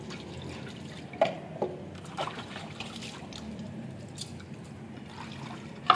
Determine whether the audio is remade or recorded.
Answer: recorded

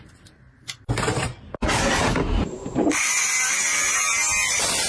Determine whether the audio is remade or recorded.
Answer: remade